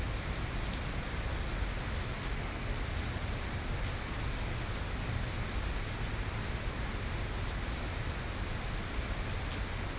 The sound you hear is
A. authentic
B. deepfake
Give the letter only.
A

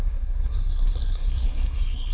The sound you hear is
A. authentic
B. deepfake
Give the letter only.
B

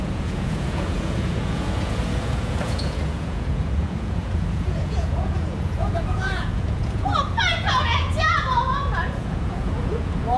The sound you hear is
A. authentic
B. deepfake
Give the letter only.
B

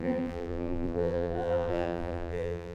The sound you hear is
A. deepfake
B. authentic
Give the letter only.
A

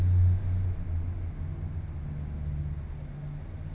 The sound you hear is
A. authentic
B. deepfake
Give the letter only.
A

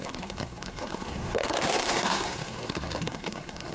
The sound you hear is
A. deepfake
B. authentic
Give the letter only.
A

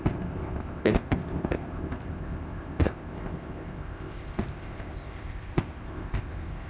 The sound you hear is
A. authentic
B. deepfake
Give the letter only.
B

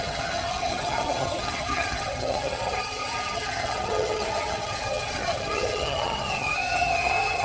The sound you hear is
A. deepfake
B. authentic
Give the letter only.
A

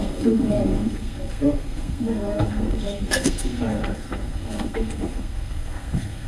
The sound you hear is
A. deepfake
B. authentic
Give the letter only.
A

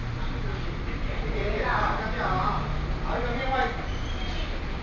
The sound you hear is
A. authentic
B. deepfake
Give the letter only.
A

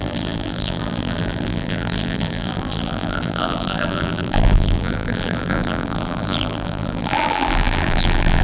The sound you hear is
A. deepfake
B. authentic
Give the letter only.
A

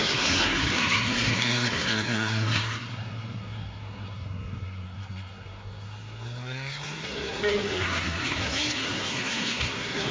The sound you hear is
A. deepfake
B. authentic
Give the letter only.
A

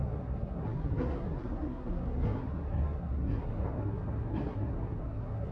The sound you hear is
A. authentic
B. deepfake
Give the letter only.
B